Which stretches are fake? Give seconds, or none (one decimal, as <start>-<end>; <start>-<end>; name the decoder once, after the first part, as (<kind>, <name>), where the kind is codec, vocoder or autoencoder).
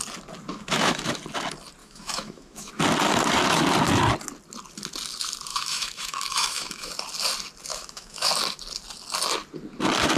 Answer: 0.5-1.1 (autoencoder, DAC-VAE); 1.8-2.7; 5.5-6.9; 7.7-8.3